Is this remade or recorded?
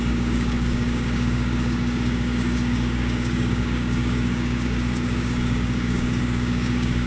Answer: remade